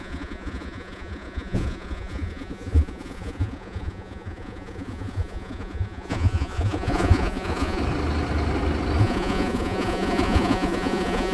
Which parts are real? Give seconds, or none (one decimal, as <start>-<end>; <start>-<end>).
7.8-9.0